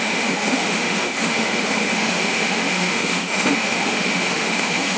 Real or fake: fake